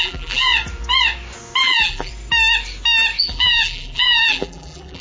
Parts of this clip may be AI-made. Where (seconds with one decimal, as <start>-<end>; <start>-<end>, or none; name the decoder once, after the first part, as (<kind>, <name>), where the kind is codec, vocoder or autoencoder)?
0.0-0.5 (vocoder, BigVGAN v2); 1.6-2.1; 3.2-5.0